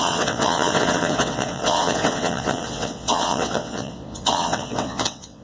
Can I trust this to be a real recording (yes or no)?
no